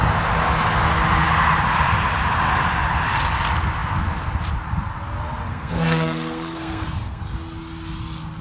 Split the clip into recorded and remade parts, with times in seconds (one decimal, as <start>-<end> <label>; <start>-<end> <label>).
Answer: 0.0-5.5 recorded; 5.5-7.2 remade; 7.2-8.4 recorded